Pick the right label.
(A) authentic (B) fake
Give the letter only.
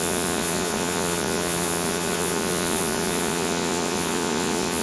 B